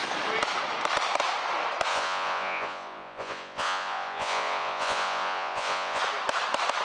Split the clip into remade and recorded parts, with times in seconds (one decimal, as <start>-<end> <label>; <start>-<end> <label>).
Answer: 0.0-1.9 recorded; 1.9-6.0 remade; 6.0-6.8 recorded

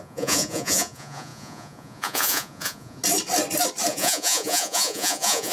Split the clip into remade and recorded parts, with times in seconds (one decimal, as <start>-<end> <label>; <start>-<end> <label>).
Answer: 0.0-3.0 remade; 3.0-3.9 recorded; 3.9-5.5 remade

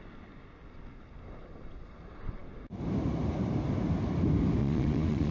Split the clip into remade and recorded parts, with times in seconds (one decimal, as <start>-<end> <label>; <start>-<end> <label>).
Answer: 0.0-4.6 recorded; 4.6-5.3 remade

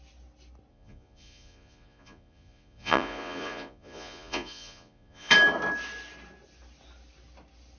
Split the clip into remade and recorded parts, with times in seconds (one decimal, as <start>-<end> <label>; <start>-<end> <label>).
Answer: 0.0-0.7 recorded; 0.7-5.3 remade; 5.3-7.8 recorded

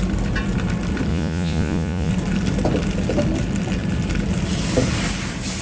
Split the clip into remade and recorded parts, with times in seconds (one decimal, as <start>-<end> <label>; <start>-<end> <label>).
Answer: 0.0-1.1 recorded; 1.1-2.1 remade; 2.1-5.6 recorded

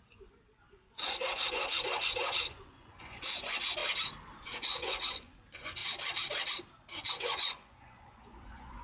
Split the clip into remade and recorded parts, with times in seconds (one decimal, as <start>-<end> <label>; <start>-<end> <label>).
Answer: 0.0-3.8 remade; 3.8-4.4 recorded; 4.4-5.8 remade; 5.8-7.1 recorded; 7.1-8.8 remade